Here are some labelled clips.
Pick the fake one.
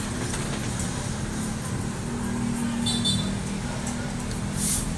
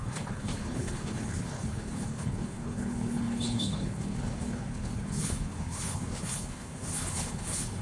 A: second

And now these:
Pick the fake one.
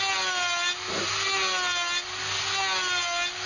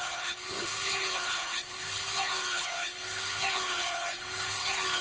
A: second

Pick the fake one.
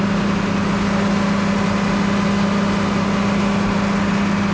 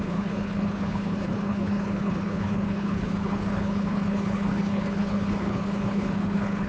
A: second